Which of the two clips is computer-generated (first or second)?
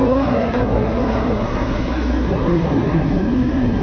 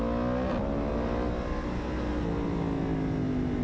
first